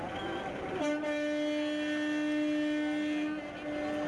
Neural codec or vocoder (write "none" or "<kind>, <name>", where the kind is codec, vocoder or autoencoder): none